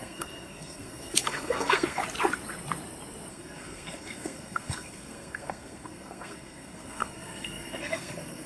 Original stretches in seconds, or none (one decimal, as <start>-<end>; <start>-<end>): 2.0-3.3